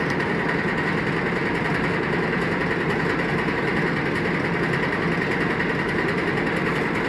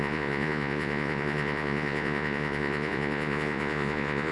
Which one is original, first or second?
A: first